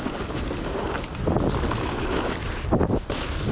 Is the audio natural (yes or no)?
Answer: yes